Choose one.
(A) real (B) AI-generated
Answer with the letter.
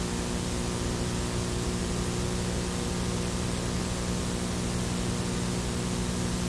A